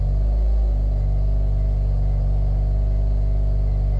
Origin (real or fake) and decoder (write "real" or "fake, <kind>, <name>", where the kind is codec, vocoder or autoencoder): real